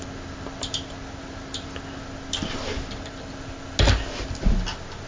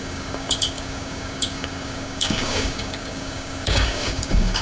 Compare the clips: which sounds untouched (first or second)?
first